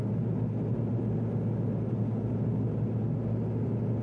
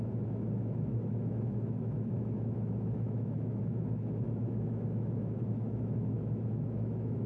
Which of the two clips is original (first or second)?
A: first